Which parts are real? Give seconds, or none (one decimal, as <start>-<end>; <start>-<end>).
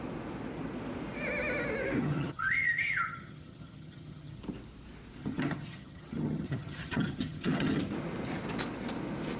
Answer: 0.0-2.0; 4.4-5.2; 7.8-9.4